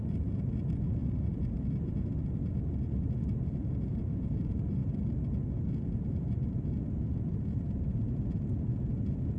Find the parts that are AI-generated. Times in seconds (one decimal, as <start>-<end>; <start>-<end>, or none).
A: 0.0-9.4